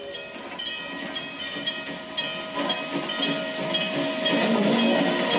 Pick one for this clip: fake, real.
real